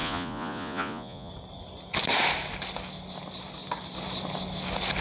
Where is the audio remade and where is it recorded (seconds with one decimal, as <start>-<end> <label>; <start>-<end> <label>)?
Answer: 0.0-1.3 remade; 1.3-5.0 recorded